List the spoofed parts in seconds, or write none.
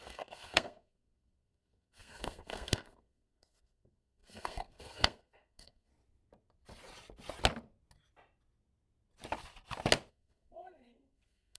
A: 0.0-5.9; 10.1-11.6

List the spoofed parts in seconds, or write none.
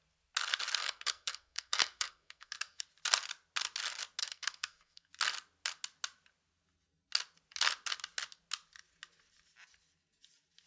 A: 0.8-2.8; 4.2-5.1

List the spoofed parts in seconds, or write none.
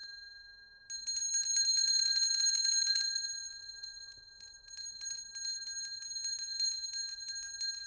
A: 1.8-5.2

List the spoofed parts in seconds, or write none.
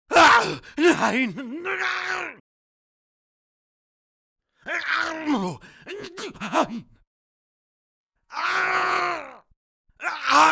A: 5.9-9.0